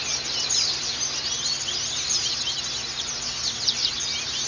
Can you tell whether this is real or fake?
real